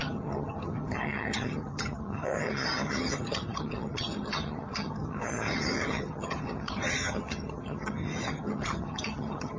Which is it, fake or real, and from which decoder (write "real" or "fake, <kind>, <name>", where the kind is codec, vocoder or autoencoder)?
fake, vocoder, HiFi-GAN